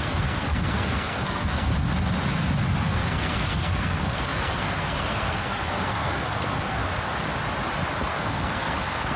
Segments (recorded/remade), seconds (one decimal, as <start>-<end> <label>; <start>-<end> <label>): 0.0-1.7 remade; 1.7-2.8 recorded; 2.8-6.8 remade; 6.8-8.1 recorded; 8.1-9.2 remade